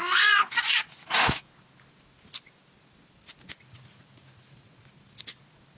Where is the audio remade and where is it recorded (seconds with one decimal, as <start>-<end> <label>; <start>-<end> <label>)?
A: 0.0-1.0 recorded; 1.0-1.5 remade; 1.5-5.8 recorded